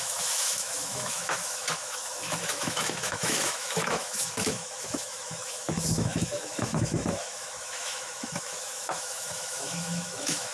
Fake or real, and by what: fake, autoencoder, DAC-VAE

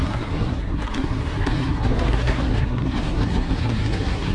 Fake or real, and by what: fake, codec, SNAC